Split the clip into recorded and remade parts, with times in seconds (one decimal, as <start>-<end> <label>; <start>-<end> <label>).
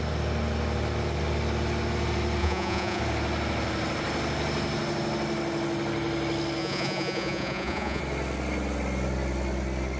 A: 0.0-2.4 recorded; 2.4-3.0 remade; 3.0-6.6 recorded; 6.6-8.0 remade; 8.0-10.0 recorded